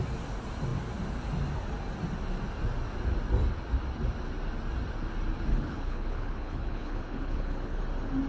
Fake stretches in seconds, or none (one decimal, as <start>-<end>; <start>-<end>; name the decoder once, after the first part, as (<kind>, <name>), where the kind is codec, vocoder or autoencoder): 5.5-7.8 (codec, HILCodec)